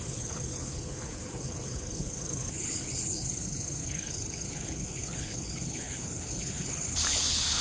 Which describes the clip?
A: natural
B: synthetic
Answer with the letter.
B